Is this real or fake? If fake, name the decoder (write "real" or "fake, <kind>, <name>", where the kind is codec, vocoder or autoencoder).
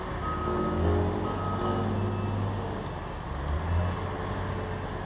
real